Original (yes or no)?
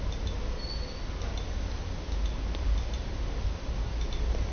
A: yes